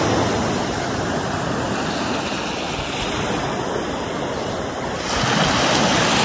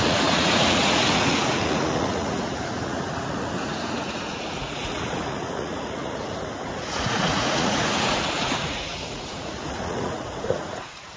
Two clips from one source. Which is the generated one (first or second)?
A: second